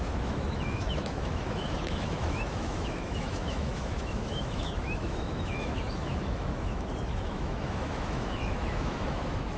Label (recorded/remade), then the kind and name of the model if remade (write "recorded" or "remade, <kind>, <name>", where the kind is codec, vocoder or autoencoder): remade, autoencoder, DAC-VAE